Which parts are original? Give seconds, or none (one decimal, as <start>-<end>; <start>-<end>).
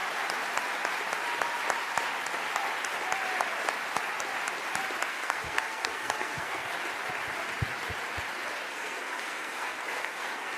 0.0-5.1; 6.7-8.7